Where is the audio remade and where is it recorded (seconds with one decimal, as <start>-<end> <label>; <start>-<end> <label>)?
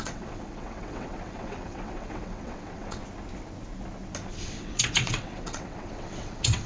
0.0-3.0 remade; 3.0-4.4 recorded; 4.4-6.7 remade